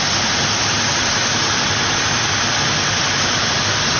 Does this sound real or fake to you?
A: real